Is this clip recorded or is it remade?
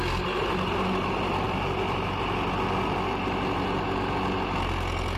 recorded